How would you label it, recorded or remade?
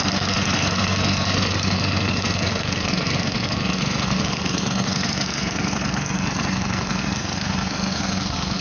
remade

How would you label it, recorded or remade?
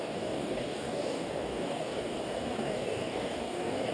remade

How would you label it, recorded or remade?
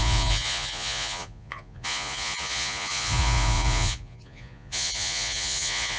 remade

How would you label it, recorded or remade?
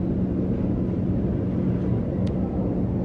recorded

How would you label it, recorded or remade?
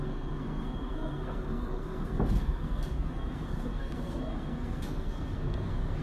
remade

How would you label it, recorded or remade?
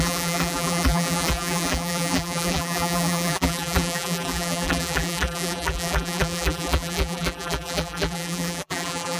remade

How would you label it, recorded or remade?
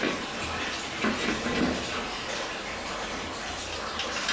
recorded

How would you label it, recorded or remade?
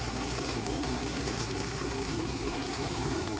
remade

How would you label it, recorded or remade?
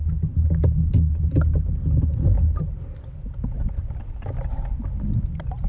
recorded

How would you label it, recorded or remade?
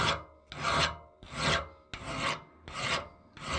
recorded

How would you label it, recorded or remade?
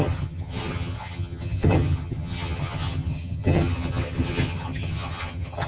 remade